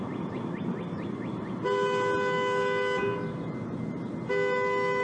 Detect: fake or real real